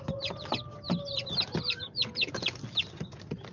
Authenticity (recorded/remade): recorded